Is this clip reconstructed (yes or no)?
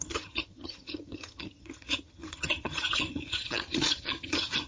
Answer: yes